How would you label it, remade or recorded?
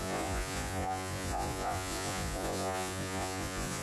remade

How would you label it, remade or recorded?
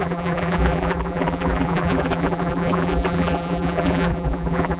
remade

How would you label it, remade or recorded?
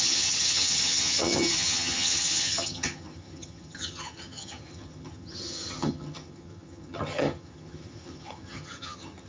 remade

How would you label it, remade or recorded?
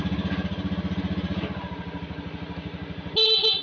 recorded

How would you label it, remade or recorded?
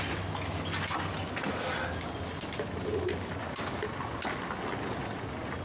recorded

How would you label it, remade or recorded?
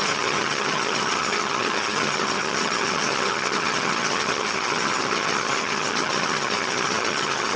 remade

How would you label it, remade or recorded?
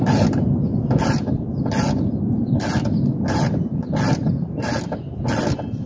recorded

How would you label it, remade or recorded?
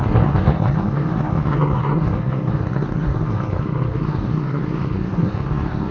remade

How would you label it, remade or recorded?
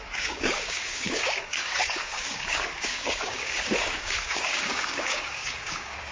remade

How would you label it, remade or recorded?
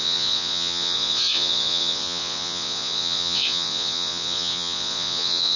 remade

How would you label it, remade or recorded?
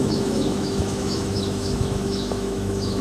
remade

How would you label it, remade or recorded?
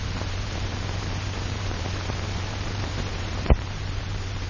remade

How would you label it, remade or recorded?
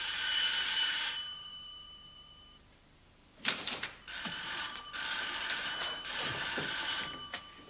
remade